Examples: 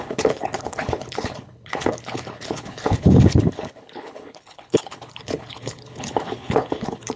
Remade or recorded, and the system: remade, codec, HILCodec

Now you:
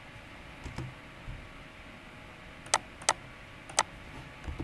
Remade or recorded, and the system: recorded